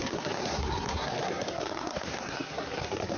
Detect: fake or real fake